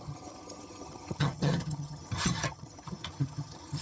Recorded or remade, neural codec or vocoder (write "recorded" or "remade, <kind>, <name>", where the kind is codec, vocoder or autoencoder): remade, vocoder, HiFi-GAN